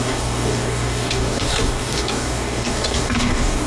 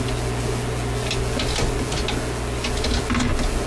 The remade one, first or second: first